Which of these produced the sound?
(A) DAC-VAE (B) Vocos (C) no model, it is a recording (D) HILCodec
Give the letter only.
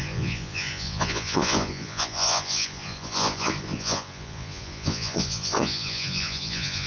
B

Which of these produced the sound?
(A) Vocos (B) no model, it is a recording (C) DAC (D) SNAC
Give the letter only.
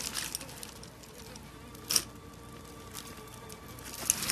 B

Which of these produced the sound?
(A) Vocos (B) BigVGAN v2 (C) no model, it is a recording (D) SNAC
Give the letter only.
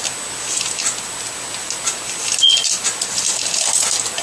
C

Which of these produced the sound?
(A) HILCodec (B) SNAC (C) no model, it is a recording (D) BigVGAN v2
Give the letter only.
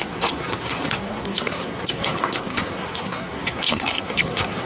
B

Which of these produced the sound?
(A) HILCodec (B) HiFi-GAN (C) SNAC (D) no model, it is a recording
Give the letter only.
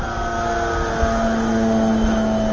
D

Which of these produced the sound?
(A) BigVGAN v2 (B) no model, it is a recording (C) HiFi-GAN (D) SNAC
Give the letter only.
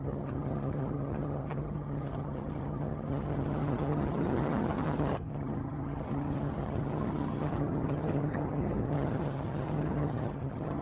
C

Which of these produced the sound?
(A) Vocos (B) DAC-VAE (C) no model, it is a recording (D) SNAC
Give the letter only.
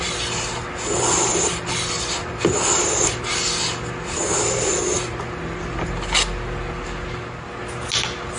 C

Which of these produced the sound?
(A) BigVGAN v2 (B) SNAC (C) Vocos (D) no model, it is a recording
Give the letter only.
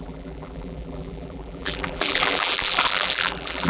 A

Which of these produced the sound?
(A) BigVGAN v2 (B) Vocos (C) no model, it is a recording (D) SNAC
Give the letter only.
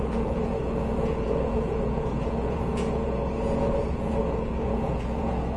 B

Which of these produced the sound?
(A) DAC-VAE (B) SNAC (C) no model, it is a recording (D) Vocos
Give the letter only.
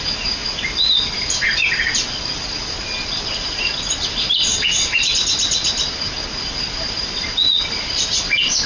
C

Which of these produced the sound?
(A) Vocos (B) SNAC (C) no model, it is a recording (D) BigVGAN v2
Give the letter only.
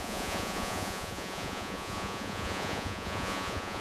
A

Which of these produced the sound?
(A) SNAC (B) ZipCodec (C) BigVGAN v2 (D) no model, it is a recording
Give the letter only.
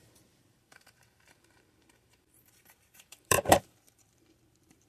C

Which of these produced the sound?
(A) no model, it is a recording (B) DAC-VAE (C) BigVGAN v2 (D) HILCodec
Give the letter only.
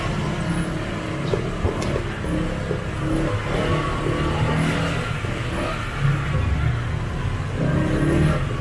A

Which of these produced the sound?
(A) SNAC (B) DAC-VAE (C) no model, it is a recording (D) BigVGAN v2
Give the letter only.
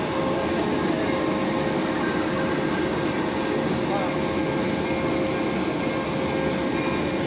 C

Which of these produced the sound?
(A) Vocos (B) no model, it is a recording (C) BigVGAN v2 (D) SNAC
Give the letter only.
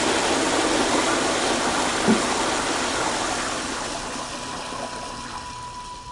B